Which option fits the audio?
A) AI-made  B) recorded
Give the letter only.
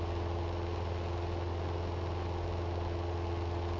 B